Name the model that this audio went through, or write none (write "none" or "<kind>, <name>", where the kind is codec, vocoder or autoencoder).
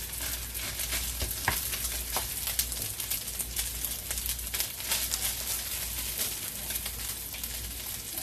none